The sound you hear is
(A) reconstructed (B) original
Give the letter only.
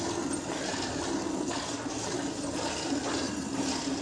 B